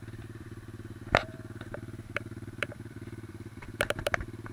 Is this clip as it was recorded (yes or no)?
no